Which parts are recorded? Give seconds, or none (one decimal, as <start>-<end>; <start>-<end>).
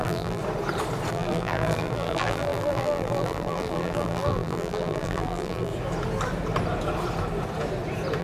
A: 0.4-1.1; 5.7-8.2